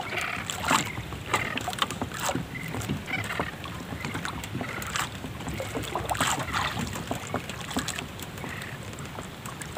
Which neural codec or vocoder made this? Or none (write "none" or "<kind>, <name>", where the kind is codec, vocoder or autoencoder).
none